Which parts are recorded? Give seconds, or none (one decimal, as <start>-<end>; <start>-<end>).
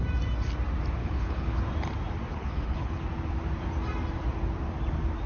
0.0-1.0; 1.6-2.3; 3.0-5.3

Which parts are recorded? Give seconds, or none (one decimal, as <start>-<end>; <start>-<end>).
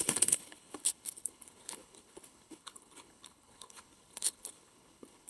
none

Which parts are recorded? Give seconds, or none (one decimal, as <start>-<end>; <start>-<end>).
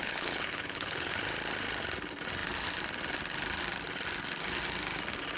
1.2-5.4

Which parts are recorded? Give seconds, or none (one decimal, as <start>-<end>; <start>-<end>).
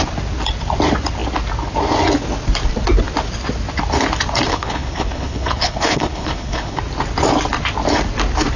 0.0-4.5; 6.8-8.6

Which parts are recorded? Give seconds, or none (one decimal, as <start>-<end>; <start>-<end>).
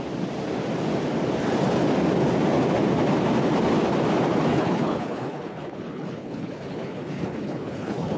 0.0-4.5